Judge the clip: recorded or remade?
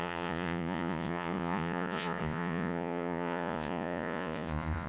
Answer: remade